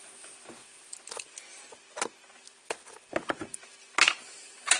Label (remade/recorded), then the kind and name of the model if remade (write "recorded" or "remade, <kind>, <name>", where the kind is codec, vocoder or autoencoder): recorded